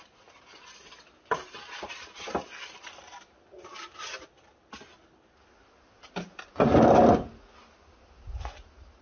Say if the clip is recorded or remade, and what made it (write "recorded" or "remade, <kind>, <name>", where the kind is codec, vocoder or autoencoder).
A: recorded